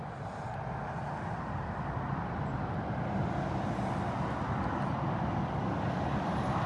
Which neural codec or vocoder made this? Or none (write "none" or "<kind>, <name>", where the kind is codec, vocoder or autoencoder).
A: none